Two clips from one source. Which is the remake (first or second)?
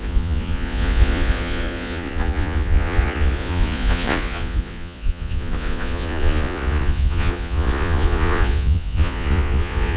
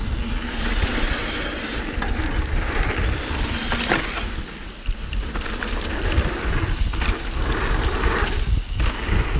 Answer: first